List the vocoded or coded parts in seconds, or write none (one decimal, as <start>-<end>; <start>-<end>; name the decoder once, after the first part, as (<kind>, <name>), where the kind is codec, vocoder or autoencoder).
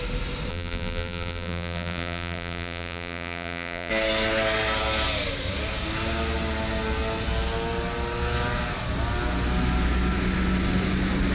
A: 0.5-3.9 (vocoder, BigVGAN v2)